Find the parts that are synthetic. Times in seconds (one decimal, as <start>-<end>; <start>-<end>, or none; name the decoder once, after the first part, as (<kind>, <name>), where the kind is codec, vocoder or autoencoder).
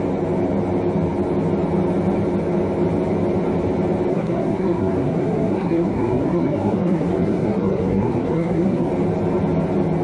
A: 4.1-8.9 (codec, SNAC)